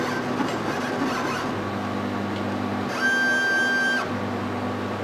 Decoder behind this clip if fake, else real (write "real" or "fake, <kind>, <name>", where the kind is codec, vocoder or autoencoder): real